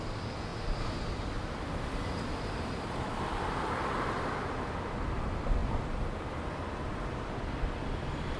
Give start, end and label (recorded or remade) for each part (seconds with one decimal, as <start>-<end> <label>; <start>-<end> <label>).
0.0-0.5 recorded; 0.5-4.4 remade; 4.4-5.6 recorded; 5.6-8.4 remade